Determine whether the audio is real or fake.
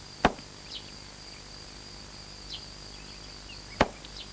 real